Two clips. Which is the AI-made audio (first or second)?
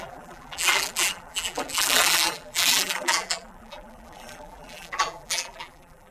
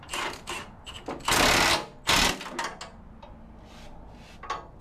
first